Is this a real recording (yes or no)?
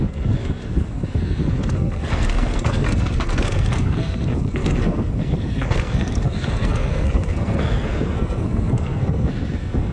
no